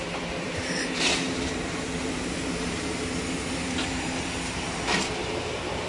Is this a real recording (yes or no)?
no